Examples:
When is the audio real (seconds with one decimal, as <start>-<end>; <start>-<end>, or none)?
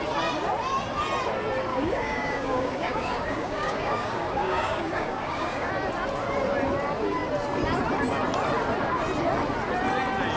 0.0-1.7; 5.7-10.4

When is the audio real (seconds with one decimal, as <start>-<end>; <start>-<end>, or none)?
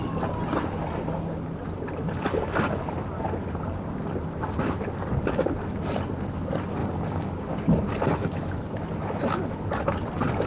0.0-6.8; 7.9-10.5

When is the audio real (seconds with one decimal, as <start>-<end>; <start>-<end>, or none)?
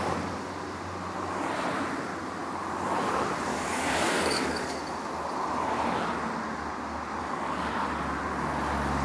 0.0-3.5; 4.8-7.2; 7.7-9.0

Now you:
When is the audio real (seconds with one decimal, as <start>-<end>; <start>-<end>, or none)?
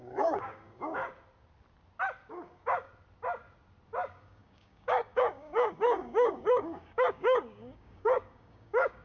1.0-2.3; 2.9-4.1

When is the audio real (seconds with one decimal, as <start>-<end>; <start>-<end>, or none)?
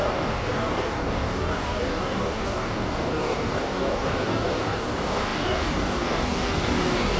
none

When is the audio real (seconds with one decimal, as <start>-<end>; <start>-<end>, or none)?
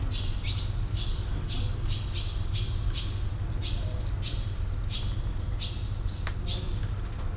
0.0-0.9; 1.7-7.4